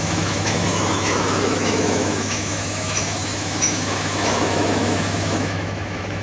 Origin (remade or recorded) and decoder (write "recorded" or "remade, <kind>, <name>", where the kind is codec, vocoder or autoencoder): remade, autoencoder, DAC-VAE